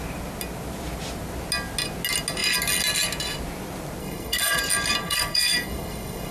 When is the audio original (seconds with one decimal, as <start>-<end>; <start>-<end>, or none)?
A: 0.0-4.0; 4.6-5.0